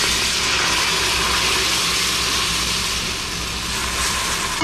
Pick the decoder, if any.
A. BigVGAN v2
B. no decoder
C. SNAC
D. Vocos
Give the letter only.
B